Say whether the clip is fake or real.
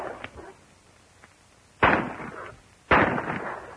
real